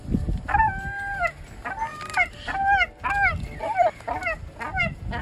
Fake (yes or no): no